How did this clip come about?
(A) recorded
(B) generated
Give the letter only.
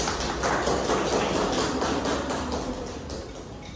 A